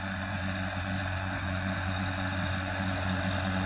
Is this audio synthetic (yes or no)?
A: yes